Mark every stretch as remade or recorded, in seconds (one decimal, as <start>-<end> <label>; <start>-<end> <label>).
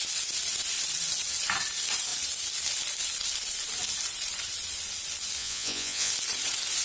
0.0-5.4 recorded; 5.4-6.1 remade; 6.1-6.8 recorded